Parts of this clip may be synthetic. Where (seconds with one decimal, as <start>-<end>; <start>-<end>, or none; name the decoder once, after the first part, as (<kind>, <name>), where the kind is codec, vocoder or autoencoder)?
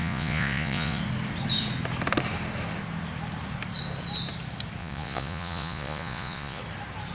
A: 0.0-1.0 (vocoder, Vocos); 4.8-6.6